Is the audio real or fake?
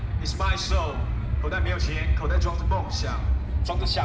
real